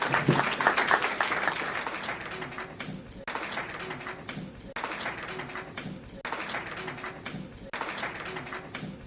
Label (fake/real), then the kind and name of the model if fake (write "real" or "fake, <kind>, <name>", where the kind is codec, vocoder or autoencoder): real